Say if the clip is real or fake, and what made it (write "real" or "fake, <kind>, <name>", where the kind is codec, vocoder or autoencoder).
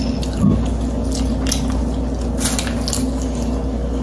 real